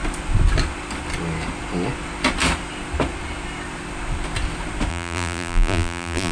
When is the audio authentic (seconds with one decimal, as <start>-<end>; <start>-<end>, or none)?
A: 0.0-4.9